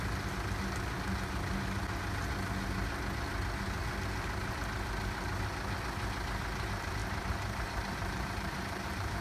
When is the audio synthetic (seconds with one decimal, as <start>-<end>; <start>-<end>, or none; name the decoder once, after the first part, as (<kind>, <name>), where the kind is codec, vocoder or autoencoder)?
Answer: 7.0-9.2 (vocoder, BigVGAN v2)